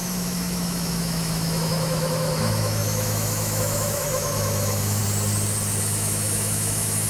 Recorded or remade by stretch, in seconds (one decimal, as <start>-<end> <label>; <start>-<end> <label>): 0.0-5.0 remade; 5.0-5.8 recorded; 5.8-7.1 remade